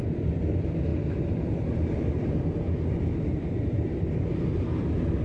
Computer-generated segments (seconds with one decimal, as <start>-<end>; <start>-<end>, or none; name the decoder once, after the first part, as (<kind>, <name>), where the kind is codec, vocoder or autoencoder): 0.0-0.9 (vocoder, BigVGAN v2); 2.2-5.2